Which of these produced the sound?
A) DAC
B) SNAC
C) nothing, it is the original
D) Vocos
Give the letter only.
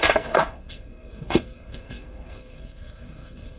B